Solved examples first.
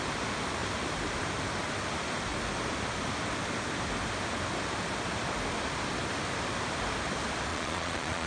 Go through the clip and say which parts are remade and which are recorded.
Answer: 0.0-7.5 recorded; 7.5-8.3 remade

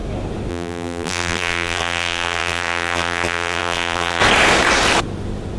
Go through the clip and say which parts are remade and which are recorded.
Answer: 0.0-0.5 recorded; 0.5-4.2 remade; 4.2-5.6 recorded

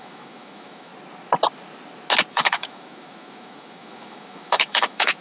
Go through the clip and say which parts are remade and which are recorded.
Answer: 0.0-0.9 remade; 0.9-2.3 recorded; 2.3-5.2 remade

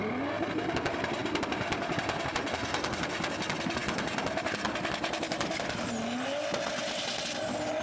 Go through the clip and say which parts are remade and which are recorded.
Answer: 0.0-7.8 recorded

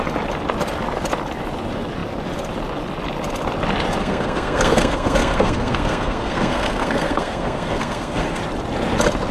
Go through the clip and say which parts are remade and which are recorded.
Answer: 0.0-4.0 recorded; 4.0-8.4 remade; 8.4-9.3 recorded